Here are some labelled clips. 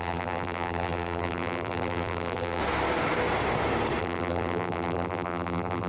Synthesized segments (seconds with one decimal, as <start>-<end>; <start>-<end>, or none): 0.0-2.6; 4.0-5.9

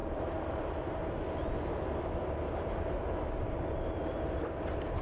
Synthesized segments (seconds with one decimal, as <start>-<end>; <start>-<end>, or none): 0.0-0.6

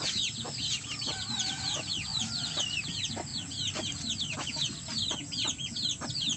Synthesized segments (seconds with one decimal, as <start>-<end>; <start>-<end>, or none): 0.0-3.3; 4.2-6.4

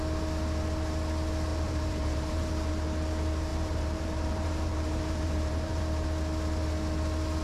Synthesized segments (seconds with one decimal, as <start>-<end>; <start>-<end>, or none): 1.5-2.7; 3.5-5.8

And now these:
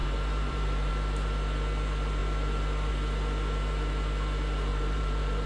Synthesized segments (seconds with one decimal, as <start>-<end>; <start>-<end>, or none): 0.0-0.9; 4.7-5.5